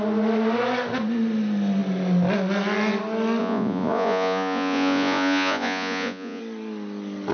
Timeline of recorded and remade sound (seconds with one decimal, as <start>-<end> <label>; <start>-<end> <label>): 0.0-3.4 recorded; 3.4-6.4 remade; 6.4-7.3 recorded